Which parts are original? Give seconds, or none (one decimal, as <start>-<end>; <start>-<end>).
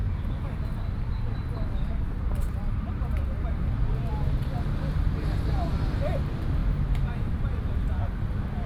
1.1-2.3; 5.2-8.7